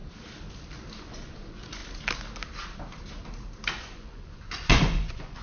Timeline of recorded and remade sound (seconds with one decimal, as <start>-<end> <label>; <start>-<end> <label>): 0.0-1.0 recorded; 1.0-1.8 remade; 1.8-3.7 recorded; 3.7-5.4 remade